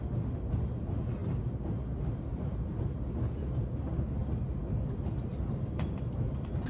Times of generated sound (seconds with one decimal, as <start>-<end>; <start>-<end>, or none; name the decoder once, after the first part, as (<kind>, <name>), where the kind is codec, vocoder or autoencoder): none